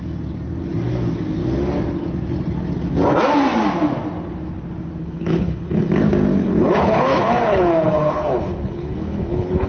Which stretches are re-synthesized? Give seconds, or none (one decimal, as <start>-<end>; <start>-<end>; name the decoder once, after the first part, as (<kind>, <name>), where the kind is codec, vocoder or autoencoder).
5.0-5.9 (codec, HILCodec); 6.4-9.7